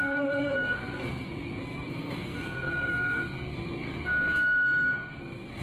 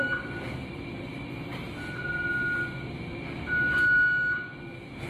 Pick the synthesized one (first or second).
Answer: first